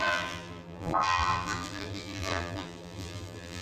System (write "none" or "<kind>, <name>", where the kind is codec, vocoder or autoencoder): vocoder, BigVGAN v2